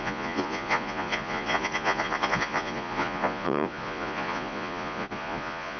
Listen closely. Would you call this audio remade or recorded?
remade